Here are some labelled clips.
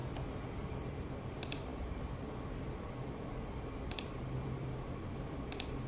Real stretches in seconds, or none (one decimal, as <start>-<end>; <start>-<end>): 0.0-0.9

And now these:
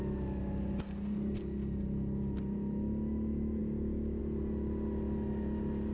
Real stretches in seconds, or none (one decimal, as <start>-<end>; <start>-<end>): 0.0-3.6; 4.2-5.9

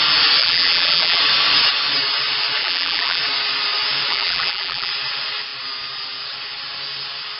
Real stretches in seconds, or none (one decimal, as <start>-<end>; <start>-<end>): 0.0-0.4; 1.2-2.6; 3.2-4.1; 4.9-7.4